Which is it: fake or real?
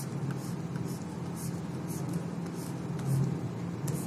real